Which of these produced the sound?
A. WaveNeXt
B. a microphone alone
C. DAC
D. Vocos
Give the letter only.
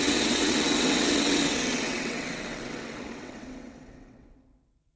A